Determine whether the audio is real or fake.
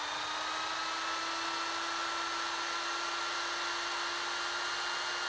real